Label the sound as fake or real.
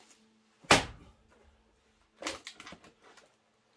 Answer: real